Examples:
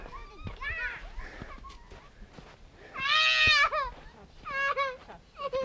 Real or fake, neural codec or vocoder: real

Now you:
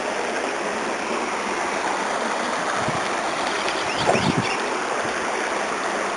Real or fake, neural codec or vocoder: fake, vocoder, BigVGAN v2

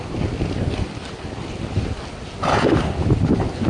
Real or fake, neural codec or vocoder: real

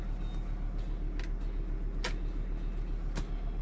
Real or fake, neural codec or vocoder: real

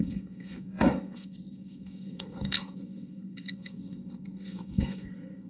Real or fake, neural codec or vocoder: fake, codec, SNAC